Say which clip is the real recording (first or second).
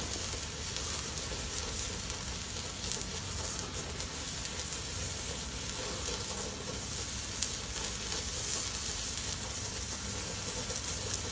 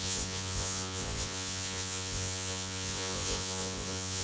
first